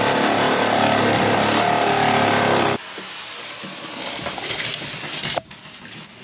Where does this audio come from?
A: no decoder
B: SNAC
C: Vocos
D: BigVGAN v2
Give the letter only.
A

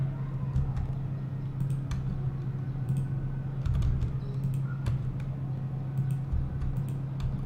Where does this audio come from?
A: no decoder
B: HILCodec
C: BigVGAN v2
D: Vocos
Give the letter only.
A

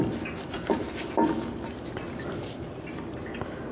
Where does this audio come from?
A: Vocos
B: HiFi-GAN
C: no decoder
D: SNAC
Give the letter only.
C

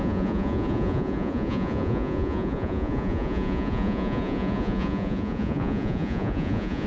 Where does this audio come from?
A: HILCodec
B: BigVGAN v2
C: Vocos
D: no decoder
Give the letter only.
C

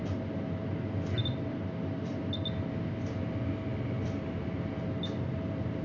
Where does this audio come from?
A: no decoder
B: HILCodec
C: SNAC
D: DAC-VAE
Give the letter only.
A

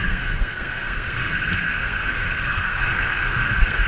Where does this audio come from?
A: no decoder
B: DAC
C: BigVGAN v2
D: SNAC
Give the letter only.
D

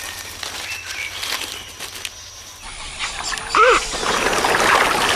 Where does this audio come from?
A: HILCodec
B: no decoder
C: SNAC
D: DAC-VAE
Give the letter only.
B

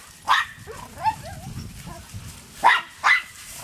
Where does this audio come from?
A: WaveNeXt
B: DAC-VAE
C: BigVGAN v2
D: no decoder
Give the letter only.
D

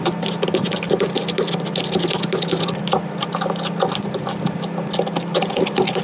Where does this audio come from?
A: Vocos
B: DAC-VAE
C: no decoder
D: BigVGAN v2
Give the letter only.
C